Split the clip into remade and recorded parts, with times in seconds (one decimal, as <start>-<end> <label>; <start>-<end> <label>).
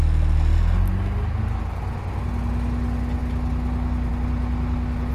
0.0-5.1 recorded